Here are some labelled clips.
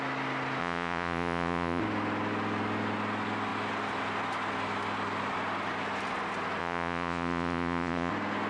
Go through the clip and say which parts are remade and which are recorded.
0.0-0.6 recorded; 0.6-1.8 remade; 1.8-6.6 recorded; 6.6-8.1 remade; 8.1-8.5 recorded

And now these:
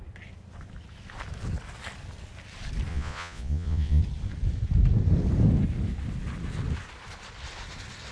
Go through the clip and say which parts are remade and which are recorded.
0.0-2.9 recorded; 2.9-4.0 remade; 4.0-8.1 recorded

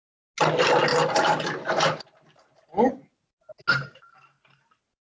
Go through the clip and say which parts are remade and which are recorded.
0.0-5.2 recorded

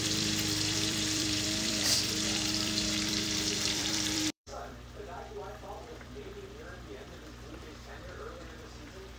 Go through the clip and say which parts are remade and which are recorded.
0.0-9.2 remade

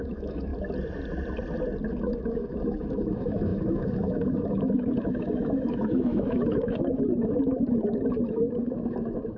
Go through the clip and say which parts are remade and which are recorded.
0.0-0.5 remade; 0.5-1.9 recorded; 1.9-9.4 remade